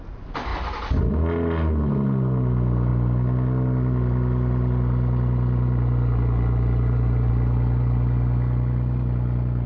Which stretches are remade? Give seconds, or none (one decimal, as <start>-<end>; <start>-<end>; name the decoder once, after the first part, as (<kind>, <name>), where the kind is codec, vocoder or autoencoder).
none